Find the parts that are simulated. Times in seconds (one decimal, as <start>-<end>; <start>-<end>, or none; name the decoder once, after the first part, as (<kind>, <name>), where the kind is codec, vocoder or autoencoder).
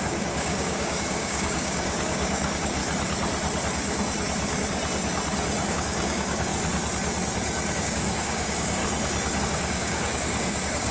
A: 0.0-2.8 (codec, DAC); 5.7-6.5; 7.8-8.8; 9.4-10.9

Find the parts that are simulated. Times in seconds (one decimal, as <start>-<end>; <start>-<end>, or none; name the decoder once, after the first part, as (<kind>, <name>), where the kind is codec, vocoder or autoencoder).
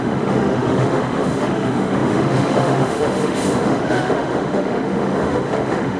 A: 0.0-6.0 (autoencoder, DAC-VAE)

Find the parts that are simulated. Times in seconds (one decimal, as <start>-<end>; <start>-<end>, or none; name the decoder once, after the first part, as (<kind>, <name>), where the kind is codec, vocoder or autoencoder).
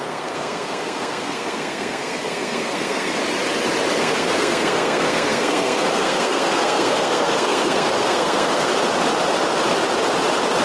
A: 0.0-3.2 (codec, SNAC); 4.0-8.7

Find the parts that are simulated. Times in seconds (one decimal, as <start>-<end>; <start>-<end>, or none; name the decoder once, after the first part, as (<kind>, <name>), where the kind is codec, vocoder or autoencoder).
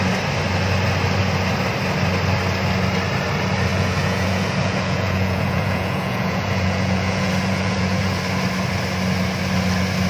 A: 3.7-8.2 (vocoder, Vocos)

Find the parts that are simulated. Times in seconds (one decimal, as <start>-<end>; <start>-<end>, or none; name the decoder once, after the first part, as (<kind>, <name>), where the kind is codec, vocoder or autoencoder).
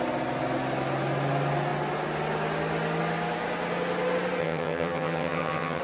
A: 4.4-5.8 (vocoder, HiFi-GAN)